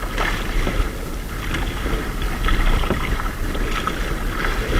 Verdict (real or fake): real